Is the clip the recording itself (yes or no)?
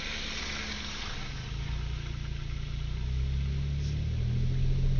yes